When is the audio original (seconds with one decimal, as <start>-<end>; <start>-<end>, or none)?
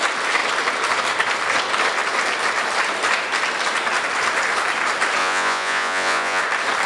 0.0-5.2; 6.4-6.9